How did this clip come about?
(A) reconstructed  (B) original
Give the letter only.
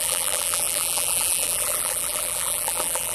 A